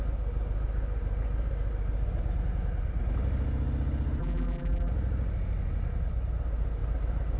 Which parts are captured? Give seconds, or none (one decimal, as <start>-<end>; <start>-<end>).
0.0-4.2; 4.9-7.4